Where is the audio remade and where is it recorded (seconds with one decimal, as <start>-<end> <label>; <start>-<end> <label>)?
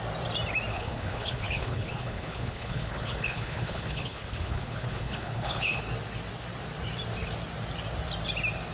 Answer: 0.0-0.7 recorded; 0.7-5.8 remade; 5.8-8.7 recorded